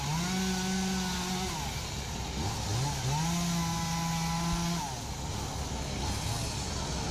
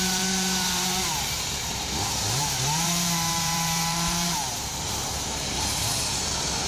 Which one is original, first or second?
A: first